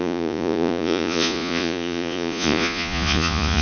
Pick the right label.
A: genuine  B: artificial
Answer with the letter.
B